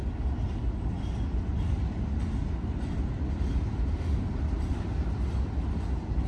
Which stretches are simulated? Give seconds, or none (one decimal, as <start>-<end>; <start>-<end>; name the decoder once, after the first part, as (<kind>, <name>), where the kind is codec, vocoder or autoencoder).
none